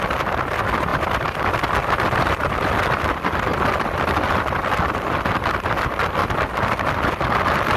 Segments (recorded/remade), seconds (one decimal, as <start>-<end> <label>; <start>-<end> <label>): 0.0-0.9 recorded; 0.9-1.5 remade; 1.5-3.5 recorded; 3.5-4.3 remade; 4.3-6.2 recorded; 6.2-6.9 remade; 6.9-7.8 recorded